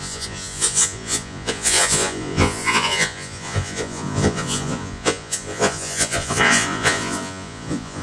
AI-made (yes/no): yes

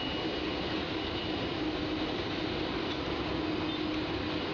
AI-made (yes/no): no